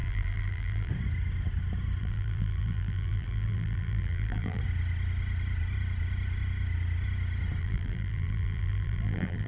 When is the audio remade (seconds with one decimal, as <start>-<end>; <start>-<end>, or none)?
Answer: 0.0-0.9; 2.0-4.6; 7.6-9.5